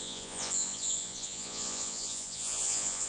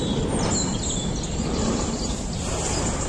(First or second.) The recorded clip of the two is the second